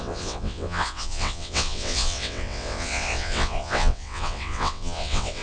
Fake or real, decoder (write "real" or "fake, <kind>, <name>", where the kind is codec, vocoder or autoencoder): fake, vocoder, WaveNeXt